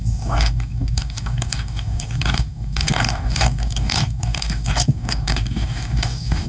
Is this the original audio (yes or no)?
no